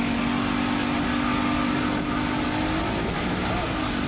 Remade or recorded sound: recorded